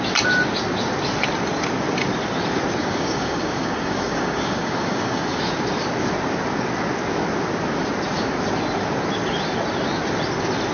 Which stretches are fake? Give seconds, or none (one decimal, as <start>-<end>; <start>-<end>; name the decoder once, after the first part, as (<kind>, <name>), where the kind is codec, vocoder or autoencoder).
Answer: 2.8-5.4 (codec, DAC)